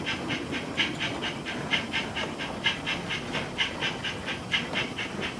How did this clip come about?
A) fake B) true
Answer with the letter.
B